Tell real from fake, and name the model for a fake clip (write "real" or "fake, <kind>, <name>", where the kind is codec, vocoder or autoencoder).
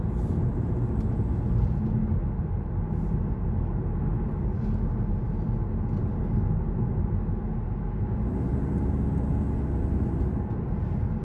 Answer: real